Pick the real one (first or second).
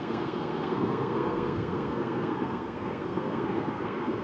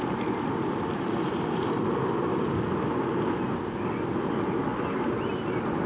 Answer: second